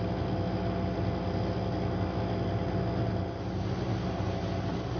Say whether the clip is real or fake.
real